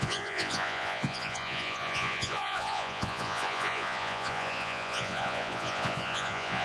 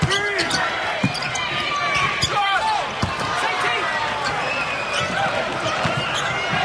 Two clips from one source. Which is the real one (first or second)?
second